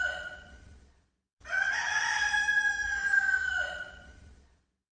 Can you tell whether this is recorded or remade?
remade